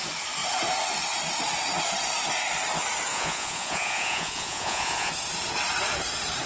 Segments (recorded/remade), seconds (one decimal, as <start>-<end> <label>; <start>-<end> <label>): 0.0-3.1 recorded; 3.1-5.1 remade; 5.1-6.5 recorded